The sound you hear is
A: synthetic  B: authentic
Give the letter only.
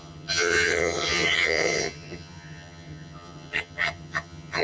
A